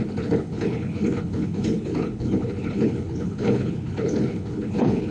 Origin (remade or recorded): remade